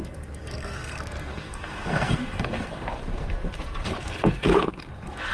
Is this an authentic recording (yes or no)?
no